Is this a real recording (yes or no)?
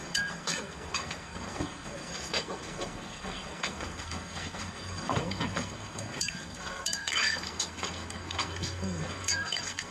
no